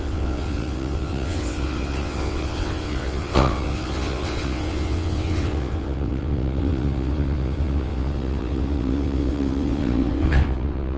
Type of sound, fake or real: fake